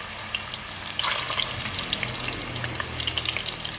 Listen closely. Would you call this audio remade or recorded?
recorded